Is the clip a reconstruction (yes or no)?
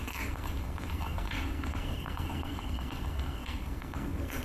yes